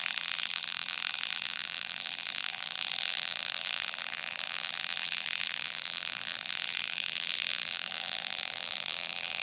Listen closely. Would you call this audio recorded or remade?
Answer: remade